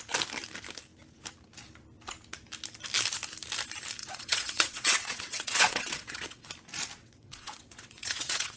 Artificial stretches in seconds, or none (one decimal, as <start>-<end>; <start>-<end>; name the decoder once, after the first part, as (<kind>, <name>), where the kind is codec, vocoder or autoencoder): 4.0-6.5 (vocoder, WaveNeXt); 7.0-8.6